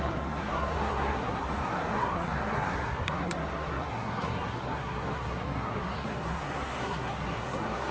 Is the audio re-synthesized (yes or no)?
yes